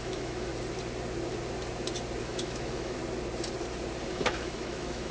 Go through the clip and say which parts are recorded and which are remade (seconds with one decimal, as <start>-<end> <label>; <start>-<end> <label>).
0.0-0.5 remade; 0.5-2.2 recorded; 2.2-3.0 remade; 3.0-4.1 recorded; 4.1-5.1 remade